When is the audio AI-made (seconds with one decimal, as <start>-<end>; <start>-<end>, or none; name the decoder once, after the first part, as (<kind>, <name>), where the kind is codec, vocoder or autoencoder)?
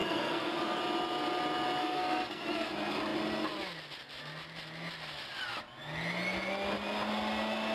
0.0-0.8 (codec, SNAC); 1.8-2.7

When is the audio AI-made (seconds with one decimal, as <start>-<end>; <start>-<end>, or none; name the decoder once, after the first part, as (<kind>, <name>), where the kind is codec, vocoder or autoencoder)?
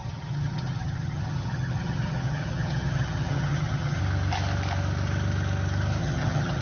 0.0-4.0 (vocoder, HiFi-GAN); 6.0-6.6